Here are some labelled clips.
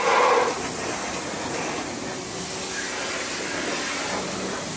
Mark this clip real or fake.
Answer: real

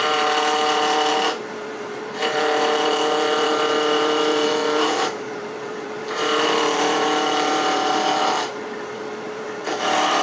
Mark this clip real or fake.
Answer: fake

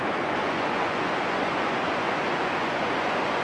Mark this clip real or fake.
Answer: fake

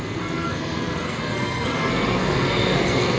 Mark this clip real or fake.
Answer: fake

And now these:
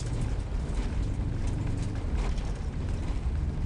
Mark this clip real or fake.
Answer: fake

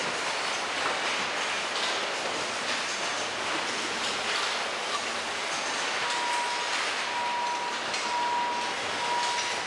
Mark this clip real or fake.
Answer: real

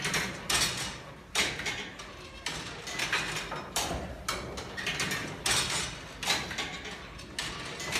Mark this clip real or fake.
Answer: real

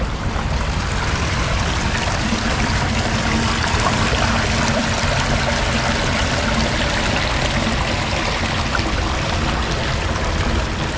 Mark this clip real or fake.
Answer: real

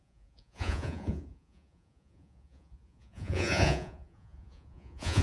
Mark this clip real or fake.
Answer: fake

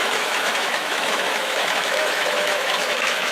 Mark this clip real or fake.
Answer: fake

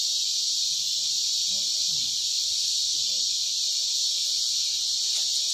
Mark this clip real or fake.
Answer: fake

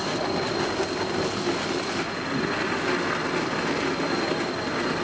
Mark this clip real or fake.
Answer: real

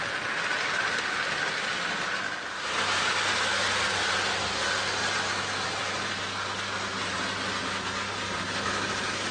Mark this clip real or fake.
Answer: real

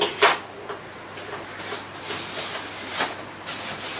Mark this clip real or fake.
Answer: real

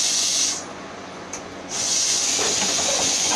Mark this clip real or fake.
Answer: fake